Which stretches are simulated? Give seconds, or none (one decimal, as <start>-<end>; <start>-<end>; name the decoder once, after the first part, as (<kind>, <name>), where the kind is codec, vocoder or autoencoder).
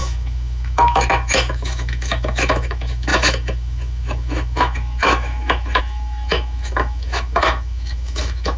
0.0-8.6 (autoencoder, DAC-VAE)